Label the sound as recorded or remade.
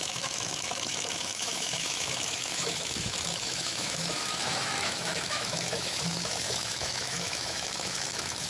remade